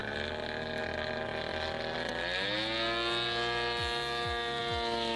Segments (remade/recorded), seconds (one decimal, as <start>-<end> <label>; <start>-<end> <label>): 0.0-5.2 recorded